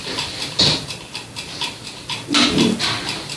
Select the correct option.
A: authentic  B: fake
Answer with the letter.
A